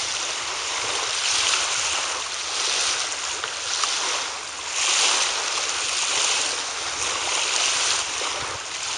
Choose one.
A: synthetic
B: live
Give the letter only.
B